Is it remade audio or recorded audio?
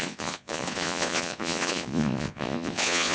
remade